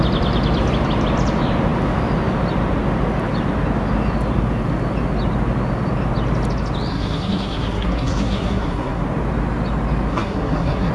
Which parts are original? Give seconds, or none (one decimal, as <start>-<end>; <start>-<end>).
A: 0.0-6.9; 9.0-10.1